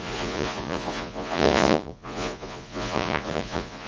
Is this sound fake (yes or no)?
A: yes